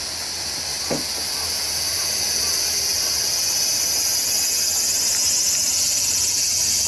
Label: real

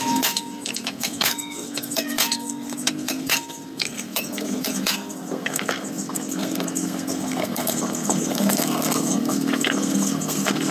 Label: fake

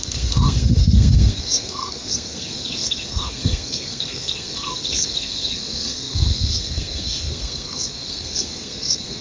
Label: fake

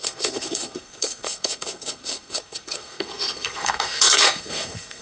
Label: fake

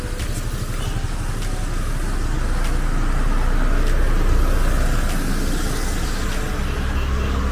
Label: real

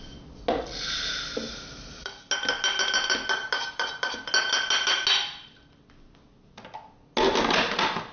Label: real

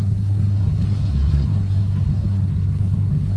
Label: fake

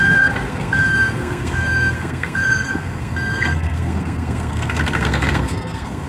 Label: fake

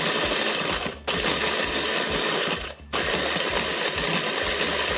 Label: real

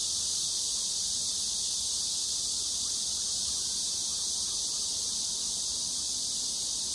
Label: real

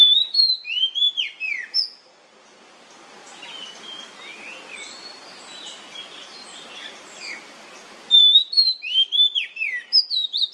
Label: real